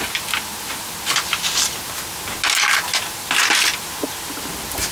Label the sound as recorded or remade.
recorded